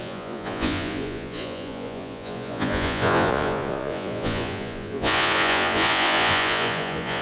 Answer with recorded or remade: remade